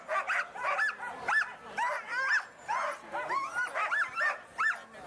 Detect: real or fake real